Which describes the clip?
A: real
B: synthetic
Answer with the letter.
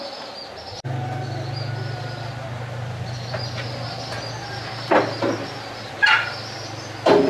A